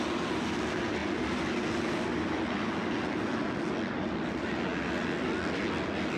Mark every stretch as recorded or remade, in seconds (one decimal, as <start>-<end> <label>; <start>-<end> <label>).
0.0-6.2 recorded